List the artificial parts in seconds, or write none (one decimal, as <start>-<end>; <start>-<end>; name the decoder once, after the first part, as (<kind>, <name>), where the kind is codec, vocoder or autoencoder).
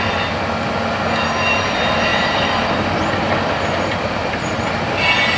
2.1-4.6 (vocoder, BigVGAN v2)